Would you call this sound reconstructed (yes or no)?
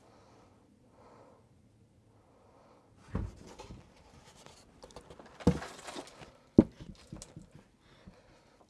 no